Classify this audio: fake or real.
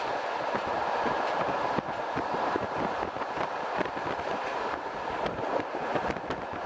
real